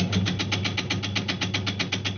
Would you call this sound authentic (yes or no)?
yes